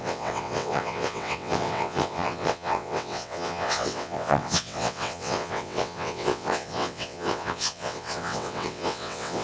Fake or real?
fake